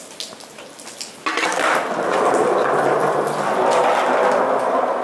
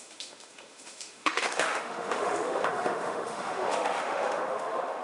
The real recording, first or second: first